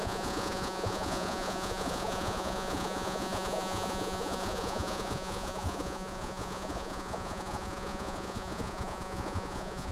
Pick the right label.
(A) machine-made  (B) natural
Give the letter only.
A